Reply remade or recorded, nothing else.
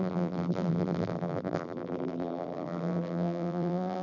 remade